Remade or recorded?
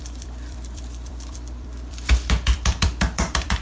remade